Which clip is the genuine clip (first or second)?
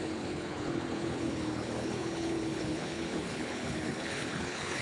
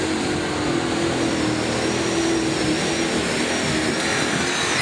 second